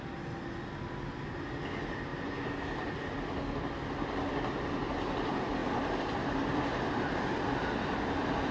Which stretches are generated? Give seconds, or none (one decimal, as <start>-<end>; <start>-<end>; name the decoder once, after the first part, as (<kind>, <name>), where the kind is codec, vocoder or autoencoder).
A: none